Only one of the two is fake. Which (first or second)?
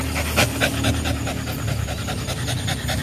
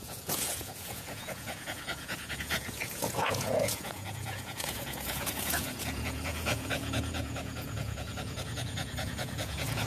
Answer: second